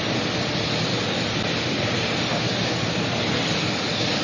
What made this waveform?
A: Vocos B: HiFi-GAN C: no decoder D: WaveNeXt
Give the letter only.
C